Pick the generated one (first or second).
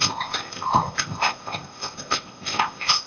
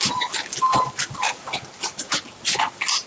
first